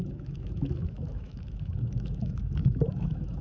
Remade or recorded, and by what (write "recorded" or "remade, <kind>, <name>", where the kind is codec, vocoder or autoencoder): remade, autoencoder, DAC-VAE